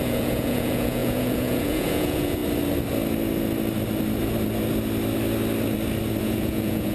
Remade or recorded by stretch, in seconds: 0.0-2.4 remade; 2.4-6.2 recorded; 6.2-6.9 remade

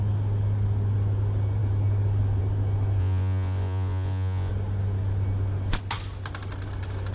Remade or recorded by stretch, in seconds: 0.0-3.0 recorded; 3.0-4.5 remade; 4.5-7.1 recorded

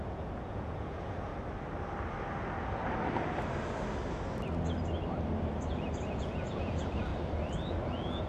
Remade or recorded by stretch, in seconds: 0.0-1.3 remade; 1.3-6.0 recorded; 6.0-7.1 remade; 7.1-7.9 recorded; 7.9-8.3 remade

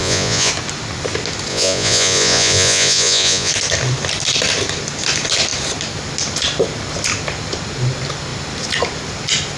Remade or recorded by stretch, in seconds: 0.0-0.5 remade; 0.5-1.5 recorded; 1.5-3.5 remade; 3.5-9.6 recorded

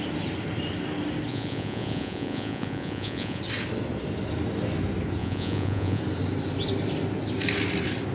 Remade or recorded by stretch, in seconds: 0.0-1.3 recorded; 1.3-3.4 remade; 3.4-5.2 recorded; 5.2-6.0 remade; 6.0-8.1 recorded

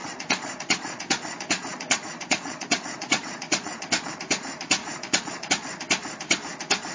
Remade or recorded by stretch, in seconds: 0.0-4.1 remade; 4.1-4.8 recorded; 4.8-5.5 remade; 5.5-6.9 recorded